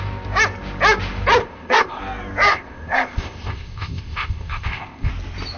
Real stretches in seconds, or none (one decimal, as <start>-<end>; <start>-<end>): 0.0-1.4; 2.0-2.5; 5.1-5.6